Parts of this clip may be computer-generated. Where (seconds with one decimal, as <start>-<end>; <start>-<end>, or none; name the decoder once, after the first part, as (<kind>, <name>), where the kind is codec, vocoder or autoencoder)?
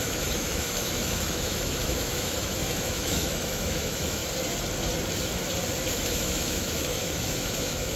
0.0-4.2 (autoencoder, DAC-VAE); 5.9-8.0